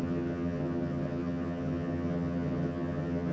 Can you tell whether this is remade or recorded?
remade